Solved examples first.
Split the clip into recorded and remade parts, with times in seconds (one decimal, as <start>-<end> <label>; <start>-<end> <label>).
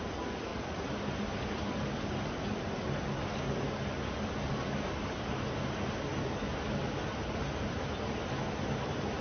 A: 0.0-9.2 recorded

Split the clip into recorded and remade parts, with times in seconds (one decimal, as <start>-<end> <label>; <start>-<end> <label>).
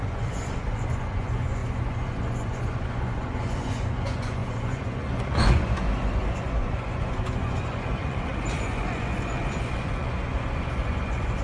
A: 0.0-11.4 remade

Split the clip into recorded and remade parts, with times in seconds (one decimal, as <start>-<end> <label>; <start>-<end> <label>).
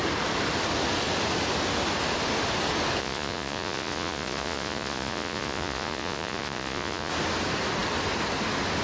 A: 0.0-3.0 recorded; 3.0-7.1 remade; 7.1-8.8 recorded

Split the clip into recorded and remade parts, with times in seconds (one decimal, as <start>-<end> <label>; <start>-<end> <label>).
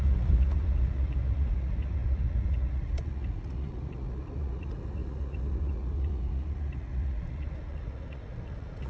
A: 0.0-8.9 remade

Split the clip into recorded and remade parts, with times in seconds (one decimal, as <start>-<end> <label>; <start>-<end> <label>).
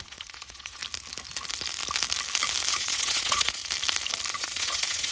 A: 0.0-0.8 remade; 0.8-2.7 recorded; 2.7-3.6 remade; 3.6-4.3 recorded; 4.3-5.1 remade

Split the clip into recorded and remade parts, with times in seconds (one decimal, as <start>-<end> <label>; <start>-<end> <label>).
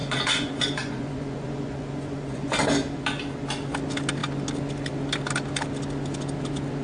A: 0.0-2.5 remade; 2.5-6.8 recorded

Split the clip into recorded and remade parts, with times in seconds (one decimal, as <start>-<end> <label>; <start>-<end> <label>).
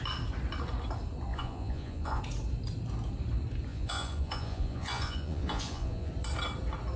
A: 0.0-1.3 recorded; 1.3-2.2 remade; 2.2-3.7 recorded; 3.7-6.1 remade; 6.1-7.0 recorded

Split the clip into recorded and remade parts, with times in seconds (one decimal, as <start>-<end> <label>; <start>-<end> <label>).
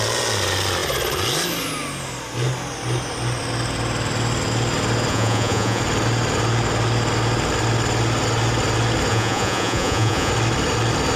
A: 0.0-5.1 recorded; 5.1-5.8 remade; 5.8-9.1 recorded; 9.1-10.3 remade; 10.3-11.2 recorded